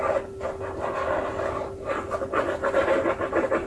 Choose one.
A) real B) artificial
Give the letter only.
A